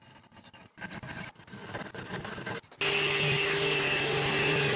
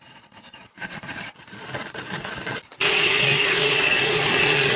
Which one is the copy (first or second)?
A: second